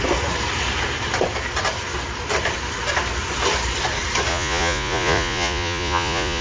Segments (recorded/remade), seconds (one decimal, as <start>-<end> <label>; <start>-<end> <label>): 0.0-4.3 recorded; 4.3-6.4 remade